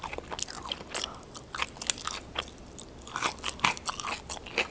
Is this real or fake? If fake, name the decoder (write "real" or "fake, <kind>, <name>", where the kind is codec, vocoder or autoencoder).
real